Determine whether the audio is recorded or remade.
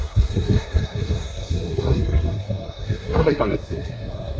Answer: remade